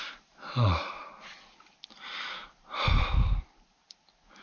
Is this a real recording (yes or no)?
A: yes